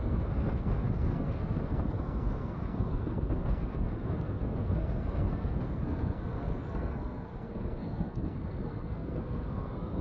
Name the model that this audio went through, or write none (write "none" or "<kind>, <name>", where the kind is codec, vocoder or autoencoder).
codec, SNAC